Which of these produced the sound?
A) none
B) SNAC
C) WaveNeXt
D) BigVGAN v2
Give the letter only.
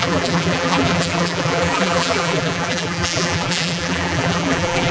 D